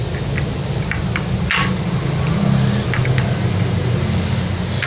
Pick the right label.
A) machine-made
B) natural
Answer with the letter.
B